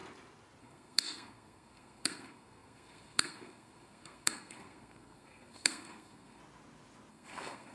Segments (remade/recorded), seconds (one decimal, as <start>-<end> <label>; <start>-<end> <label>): 0.0-0.6 recorded; 0.6-6.4 remade; 6.4-7.1 recorded; 7.1-7.7 remade